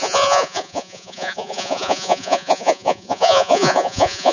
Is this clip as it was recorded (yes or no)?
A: no